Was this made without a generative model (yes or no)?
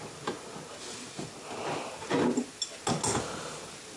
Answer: yes